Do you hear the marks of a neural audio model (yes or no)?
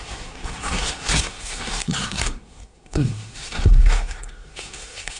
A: yes